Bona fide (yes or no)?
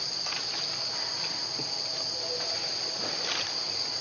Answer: no